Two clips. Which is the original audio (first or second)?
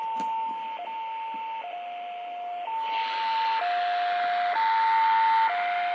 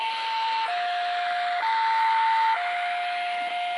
first